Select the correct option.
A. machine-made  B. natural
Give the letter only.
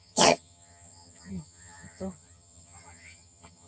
A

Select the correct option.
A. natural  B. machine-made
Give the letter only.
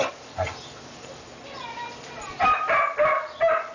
A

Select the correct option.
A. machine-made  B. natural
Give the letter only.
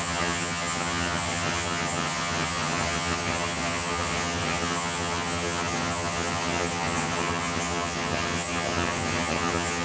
A